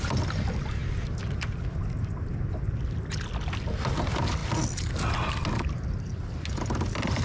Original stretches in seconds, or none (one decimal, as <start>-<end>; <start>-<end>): 0.0-7.2